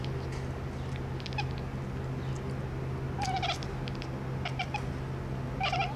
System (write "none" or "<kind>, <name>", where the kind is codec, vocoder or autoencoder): none